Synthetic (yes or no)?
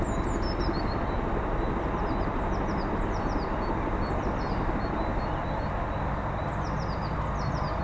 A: no